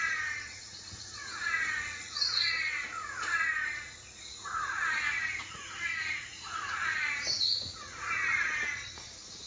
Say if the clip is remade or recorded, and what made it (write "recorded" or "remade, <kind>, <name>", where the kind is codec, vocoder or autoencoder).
remade, vocoder, Vocos